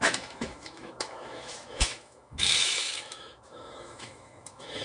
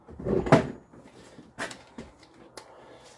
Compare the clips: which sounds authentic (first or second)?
second